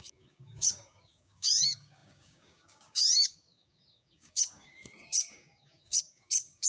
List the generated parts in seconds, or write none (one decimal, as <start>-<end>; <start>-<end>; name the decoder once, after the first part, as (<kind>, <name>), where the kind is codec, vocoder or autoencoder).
0.0-6.7 (codec, DAC)